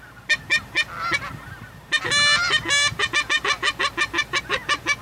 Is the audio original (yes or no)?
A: yes